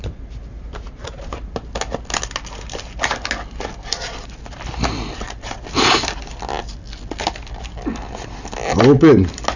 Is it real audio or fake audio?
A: real